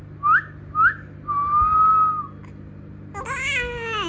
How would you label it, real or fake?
real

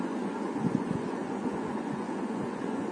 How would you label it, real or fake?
fake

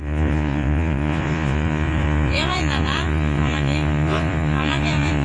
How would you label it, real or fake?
fake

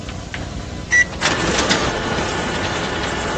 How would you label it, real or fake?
real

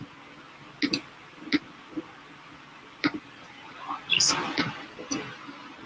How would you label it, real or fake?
real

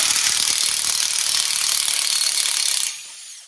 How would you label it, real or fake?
real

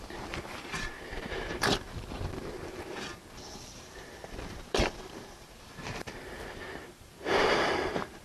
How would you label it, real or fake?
fake